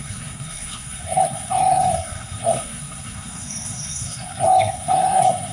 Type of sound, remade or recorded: remade